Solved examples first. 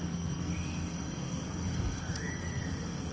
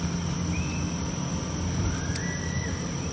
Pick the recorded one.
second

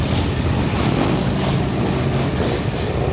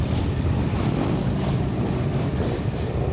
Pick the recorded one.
first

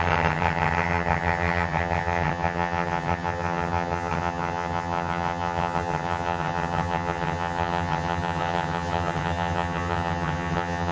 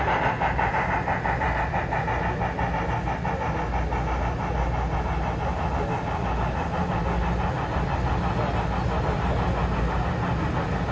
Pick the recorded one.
second